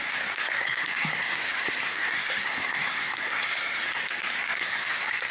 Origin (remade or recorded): remade